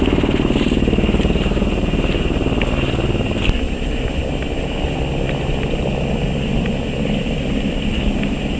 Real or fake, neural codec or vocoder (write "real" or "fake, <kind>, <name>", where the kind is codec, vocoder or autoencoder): real